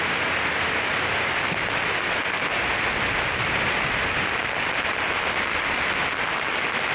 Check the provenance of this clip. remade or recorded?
recorded